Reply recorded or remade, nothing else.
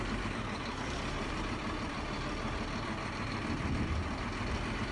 remade